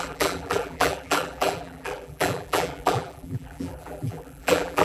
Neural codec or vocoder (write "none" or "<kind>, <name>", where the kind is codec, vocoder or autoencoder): vocoder, BigVGAN v2